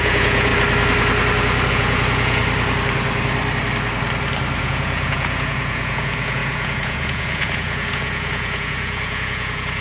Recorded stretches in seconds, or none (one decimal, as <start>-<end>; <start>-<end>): 0.5-1.7; 2.4-4.6